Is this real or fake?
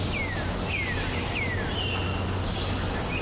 real